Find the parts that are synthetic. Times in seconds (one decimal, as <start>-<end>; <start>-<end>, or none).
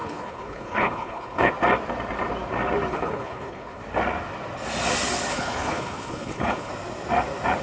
0.0-1.5; 2.9-3.8; 5.3-6.7